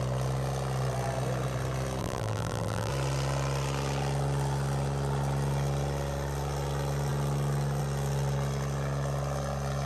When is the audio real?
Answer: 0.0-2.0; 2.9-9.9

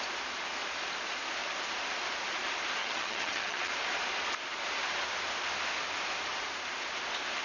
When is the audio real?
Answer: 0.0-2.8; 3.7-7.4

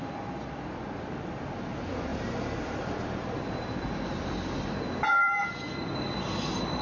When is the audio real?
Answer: 0.0-2.1; 5.4-6.8

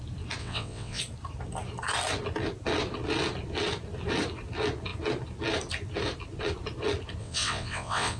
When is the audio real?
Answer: 0.0-0.4; 1.0-7.2